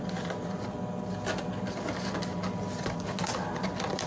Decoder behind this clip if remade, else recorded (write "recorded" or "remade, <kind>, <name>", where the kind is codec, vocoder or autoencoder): recorded